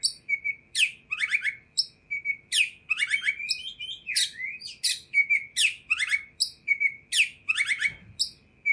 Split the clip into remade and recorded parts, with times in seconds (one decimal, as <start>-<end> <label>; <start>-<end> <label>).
0.0-8.7 recorded